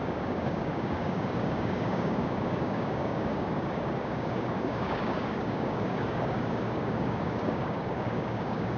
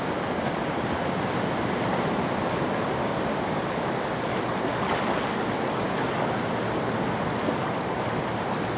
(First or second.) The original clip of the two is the second